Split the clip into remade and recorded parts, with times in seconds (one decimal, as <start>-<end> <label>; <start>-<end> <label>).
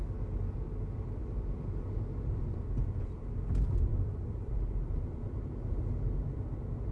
0.0-3.9 recorded; 3.9-5.8 remade; 5.8-6.9 recorded